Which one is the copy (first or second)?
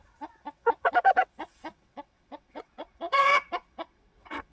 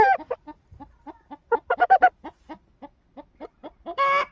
first